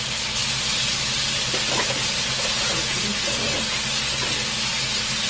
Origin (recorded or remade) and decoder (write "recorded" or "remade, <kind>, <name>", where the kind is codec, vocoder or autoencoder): recorded